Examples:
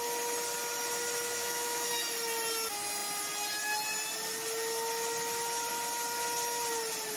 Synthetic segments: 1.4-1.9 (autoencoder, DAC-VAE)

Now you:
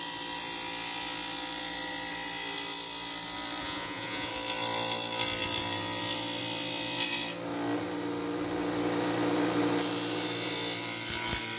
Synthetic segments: 3.6-4.3 (vocoder, Vocos)

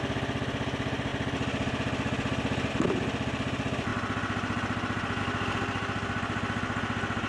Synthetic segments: none

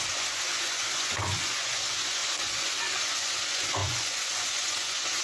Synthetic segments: 0.0-5.2 (vocoder, Vocos)

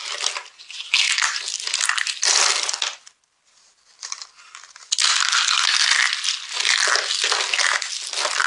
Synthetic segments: none

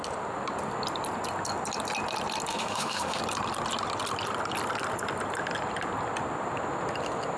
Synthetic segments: 2.5-3.2 (autoencoder, DAC-VAE)

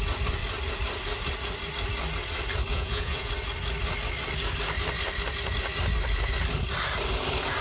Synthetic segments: 2.7-3.3 (vocoder, Vocos)